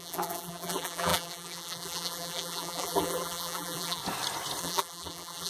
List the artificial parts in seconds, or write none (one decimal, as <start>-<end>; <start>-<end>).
0.0-4.0; 4.6-5.5